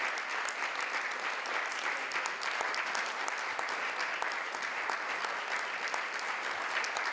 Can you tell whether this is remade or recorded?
recorded